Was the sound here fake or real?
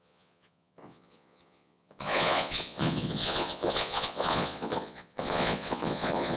fake